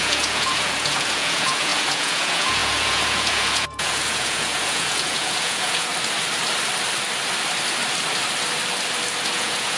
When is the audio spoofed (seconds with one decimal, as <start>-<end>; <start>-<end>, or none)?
0.0-5.9; 9.3-9.8